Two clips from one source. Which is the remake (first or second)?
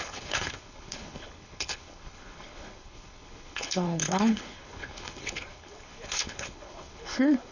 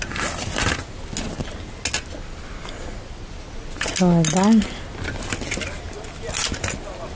first